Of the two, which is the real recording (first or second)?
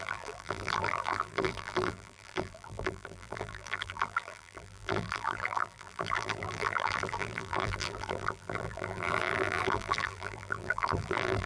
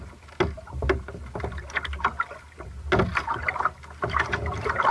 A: second